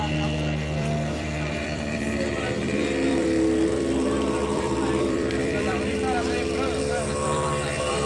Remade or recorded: remade